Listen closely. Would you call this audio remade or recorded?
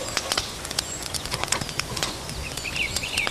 remade